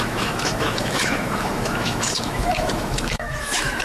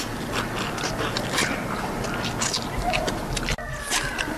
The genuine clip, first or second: second